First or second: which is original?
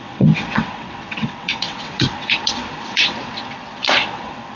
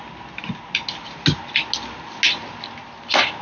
second